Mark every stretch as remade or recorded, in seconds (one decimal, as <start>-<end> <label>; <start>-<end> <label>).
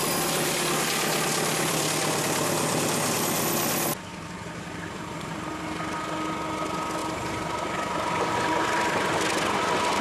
0.0-4.1 recorded; 4.1-5.3 remade; 5.3-10.0 recorded